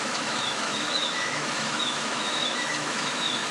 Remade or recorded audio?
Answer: remade